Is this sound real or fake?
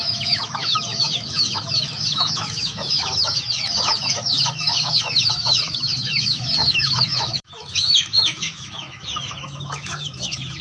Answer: fake